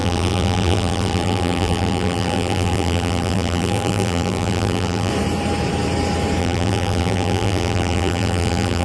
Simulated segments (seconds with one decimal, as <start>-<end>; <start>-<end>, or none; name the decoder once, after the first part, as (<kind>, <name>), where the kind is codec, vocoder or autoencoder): 0.0-5.1 (vocoder, BigVGAN v2); 6.4-8.8